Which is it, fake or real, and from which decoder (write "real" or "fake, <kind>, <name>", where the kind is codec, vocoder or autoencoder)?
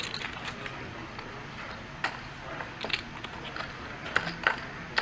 real